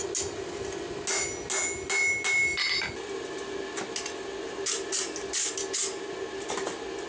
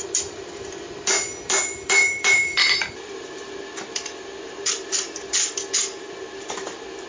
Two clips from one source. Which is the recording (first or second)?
first